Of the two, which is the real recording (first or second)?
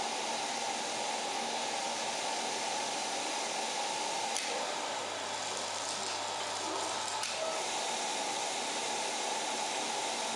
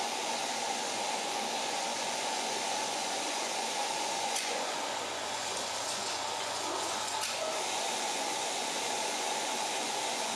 first